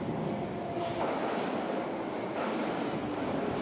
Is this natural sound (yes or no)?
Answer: yes